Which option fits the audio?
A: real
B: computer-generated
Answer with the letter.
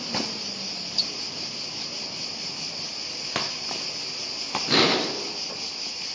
A